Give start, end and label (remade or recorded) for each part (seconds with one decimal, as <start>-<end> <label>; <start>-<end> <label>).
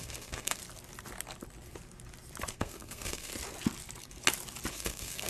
0.0-0.6 remade; 0.6-2.5 recorded; 2.5-3.3 remade; 3.3-4.7 recorded; 4.7-5.3 remade